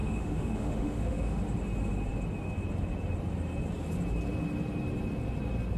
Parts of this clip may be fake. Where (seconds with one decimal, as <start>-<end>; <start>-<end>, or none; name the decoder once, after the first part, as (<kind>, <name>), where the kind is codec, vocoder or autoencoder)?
0.0-1.4 (autoencoder, DAC-VAE)